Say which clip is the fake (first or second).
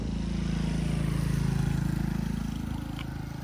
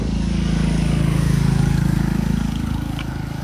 second